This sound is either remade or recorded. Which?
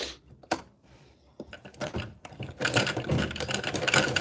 remade